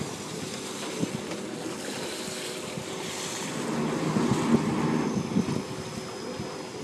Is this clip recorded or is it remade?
recorded